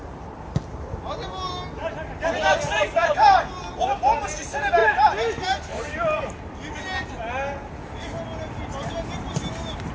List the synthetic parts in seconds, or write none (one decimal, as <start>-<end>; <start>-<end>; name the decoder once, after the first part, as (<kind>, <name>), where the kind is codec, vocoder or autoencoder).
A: none